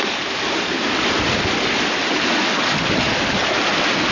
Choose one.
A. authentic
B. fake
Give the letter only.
A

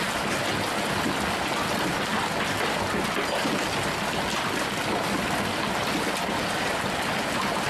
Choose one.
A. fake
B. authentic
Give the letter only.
B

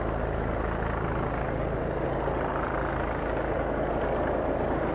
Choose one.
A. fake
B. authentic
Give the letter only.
B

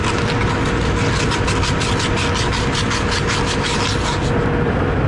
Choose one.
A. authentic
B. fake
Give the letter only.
A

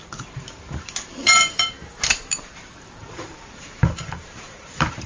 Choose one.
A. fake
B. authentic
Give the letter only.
A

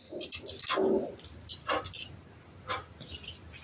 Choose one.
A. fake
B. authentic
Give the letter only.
B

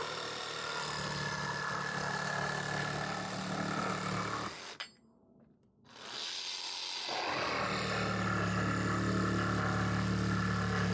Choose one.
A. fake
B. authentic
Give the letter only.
B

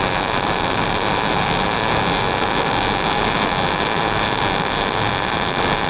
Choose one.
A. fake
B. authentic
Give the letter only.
B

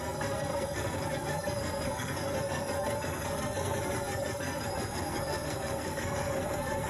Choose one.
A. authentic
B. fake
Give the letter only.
B